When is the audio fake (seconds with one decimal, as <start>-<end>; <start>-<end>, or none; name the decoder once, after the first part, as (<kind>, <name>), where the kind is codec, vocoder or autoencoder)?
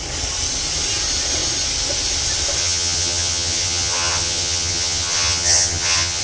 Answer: 2.6-6.2 (vocoder, HiFi-GAN)